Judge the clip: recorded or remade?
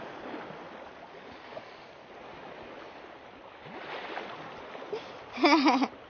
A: recorded